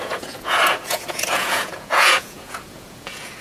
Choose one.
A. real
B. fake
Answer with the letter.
B